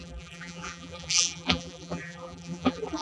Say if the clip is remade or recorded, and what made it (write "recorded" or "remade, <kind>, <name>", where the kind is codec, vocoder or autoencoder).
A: remade, vocoder, BigVGAN v2